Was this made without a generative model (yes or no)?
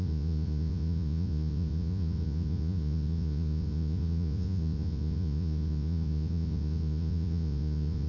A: no